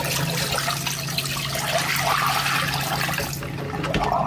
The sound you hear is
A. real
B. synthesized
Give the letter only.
A